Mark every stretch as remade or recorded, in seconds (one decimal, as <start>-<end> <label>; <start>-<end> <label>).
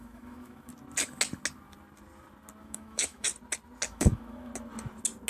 0.0-0.7 remade; 0.7-2.6 recorded; 2.6-3.3 remade; 3.3-3.9 recorded; 3.9-4.5 remade; 4.5-5.3 recorded